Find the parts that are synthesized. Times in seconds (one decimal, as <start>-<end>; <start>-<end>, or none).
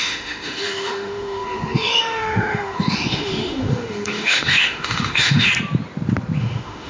0.0-5.5; 6.4-6.9